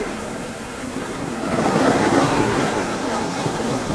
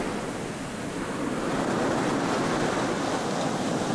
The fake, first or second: first